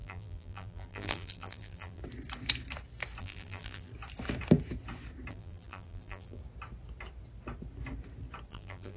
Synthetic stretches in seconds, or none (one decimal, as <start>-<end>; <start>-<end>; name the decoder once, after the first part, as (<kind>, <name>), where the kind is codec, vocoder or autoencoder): 0.0-2.0 (vocoder, BigVGAN v2); 3.2-3.9; 5.3-6.4; 8.5-9.0